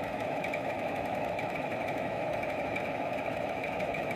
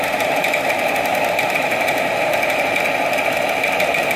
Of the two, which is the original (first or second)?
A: second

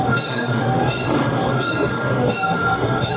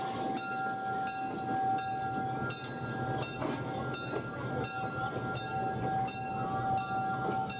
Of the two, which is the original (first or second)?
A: second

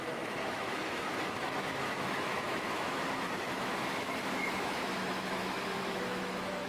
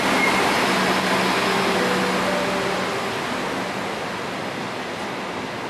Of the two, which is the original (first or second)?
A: second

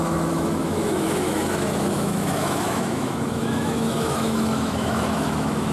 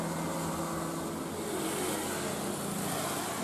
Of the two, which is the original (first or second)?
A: second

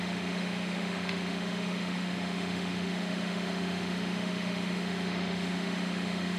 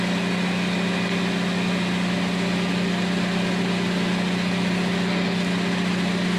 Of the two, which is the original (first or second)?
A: second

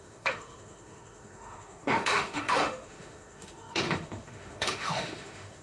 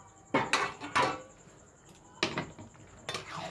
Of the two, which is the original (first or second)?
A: second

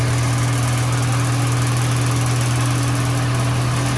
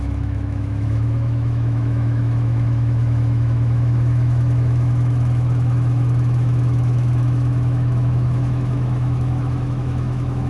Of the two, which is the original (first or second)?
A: first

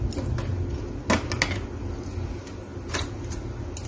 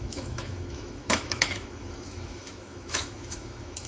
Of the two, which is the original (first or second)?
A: first